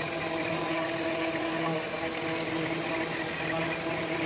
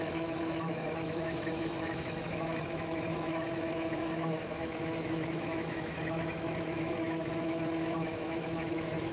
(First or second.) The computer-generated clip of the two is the second